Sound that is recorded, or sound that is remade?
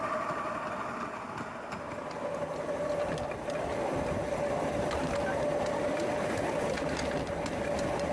recorded